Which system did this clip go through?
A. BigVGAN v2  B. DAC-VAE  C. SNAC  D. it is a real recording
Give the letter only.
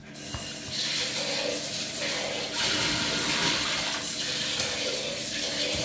D